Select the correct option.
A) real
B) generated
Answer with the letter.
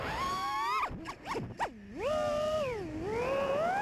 A